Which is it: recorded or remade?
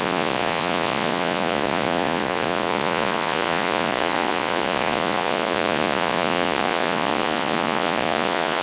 remade